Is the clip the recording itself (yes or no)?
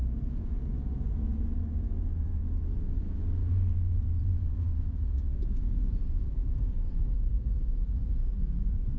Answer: no